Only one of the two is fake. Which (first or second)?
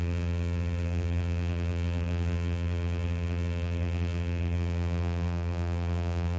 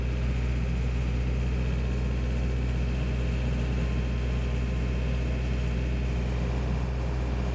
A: first